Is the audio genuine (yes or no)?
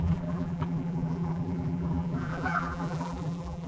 no